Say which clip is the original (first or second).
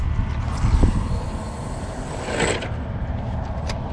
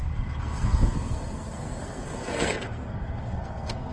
first